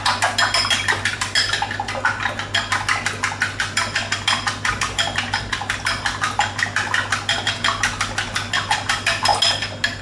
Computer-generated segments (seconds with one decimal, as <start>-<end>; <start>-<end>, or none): none